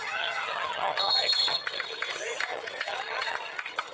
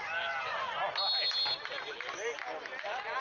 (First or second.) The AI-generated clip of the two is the first